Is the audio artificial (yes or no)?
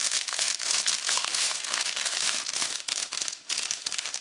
yes